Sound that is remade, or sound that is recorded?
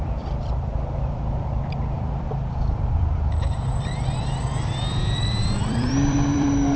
remade